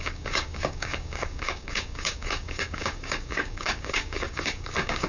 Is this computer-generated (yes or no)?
yes